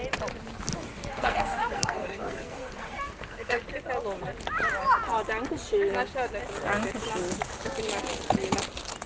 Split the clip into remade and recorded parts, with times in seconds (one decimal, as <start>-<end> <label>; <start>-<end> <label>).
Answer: 0.0-0.9 recorded; 0.9-3.7 remade; 3.7-9.1 recorded